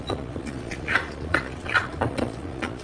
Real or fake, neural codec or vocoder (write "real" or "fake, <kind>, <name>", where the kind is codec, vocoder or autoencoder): fake, vocoder, Vocos